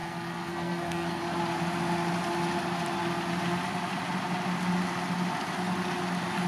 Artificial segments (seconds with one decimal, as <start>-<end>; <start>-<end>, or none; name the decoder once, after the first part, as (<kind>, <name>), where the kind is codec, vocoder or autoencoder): 0.0-1.2 (codec, SNAC)